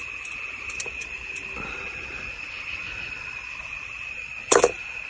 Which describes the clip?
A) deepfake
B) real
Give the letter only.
B